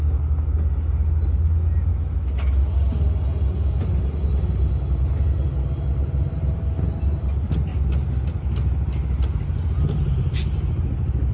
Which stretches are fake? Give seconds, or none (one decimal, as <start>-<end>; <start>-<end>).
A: 1.9-2.7